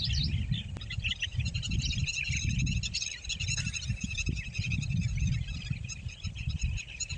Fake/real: real